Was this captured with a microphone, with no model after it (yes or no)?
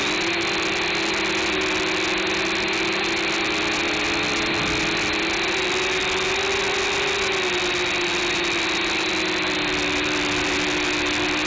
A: yes